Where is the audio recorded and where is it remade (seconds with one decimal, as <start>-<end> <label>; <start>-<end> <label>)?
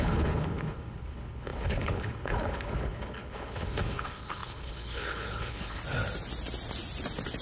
0.0-5.8 remade; 5.8-7.4 recorded